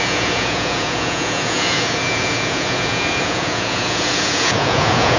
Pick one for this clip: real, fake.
fake